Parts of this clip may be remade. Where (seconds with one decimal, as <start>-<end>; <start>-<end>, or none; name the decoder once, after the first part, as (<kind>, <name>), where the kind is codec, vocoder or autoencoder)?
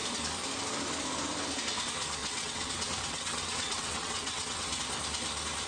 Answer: 2.2-4.8 (vocoder, WaveNeXt)